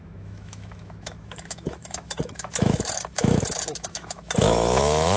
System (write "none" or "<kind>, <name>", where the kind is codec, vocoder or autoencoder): autoencoder, DAC-VAE